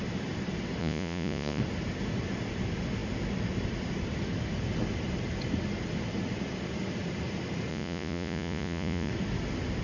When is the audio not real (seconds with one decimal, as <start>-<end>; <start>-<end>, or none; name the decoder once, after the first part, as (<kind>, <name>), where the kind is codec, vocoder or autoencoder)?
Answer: 0.8-1.6 (vocoder, Vocos); 7.7-9.1